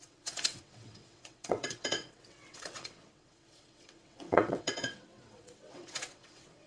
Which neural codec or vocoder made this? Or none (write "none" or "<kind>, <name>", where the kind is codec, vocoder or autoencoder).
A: vocoder, WaveNeXt